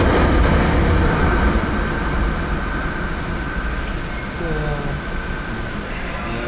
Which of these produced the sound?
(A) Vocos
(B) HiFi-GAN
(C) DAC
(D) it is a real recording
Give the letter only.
D